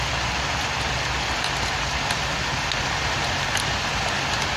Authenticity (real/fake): real